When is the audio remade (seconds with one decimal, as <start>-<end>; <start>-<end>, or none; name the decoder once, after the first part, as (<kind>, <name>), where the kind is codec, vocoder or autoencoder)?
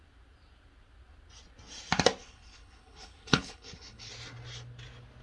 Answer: 2.2-4.1 (codec, HILCodec)